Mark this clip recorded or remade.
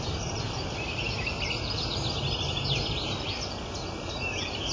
recorded